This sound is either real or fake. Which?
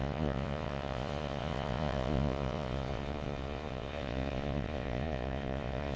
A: fake